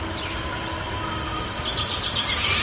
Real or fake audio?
real